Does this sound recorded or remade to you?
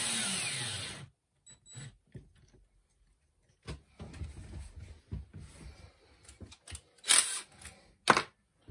recorded